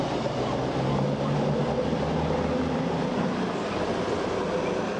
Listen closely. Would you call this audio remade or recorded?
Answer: recorded